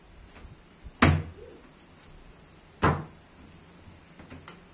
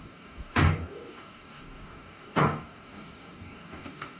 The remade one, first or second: second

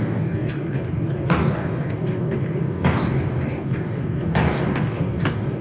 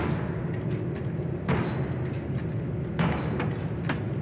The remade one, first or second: first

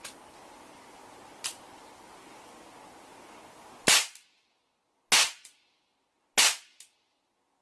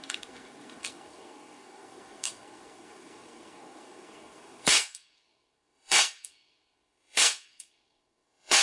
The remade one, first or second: second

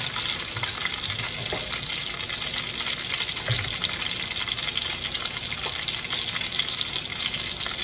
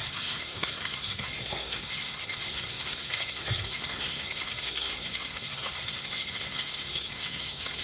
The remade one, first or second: second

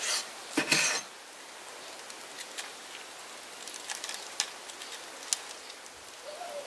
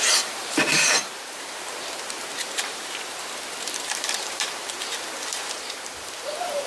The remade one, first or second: second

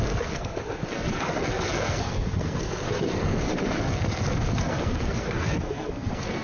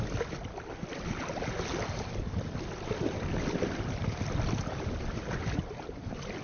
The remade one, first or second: first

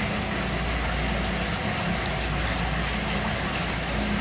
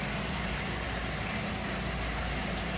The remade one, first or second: second